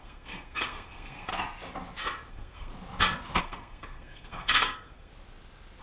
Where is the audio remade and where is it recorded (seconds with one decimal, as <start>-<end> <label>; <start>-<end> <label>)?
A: 0.0-1.3 remade; 1.3-2.3 recorded; 2.3-2.7 remade; 2.7-3.4 recorded; 3.4-5.1 remade; 5.1-5.8 recorded